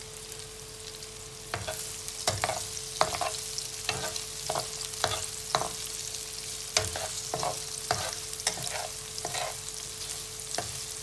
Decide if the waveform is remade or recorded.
recorded